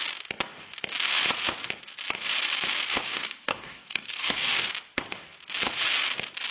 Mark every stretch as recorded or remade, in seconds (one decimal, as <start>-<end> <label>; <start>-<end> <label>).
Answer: 0.0-3.1 recorded; 3.1-4.7 remade; 4.7-6.5 recorded